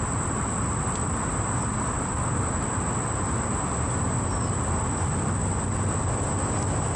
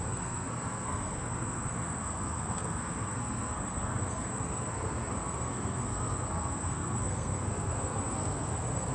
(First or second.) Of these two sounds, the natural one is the first